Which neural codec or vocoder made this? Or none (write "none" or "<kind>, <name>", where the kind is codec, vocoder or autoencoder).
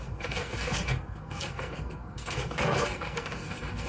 codec, SNAC